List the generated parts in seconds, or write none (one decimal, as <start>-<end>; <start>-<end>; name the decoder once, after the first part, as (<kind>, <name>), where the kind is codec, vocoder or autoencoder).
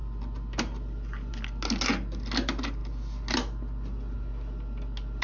none